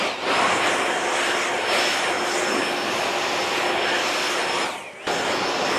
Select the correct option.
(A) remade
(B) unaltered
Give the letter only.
B